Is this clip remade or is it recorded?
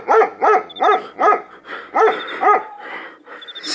recorded